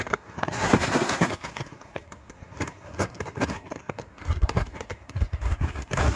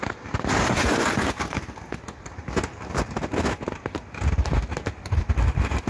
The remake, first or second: first